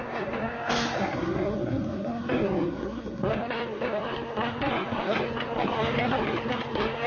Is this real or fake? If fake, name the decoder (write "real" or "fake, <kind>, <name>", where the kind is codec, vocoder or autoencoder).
fake, codec, SNAC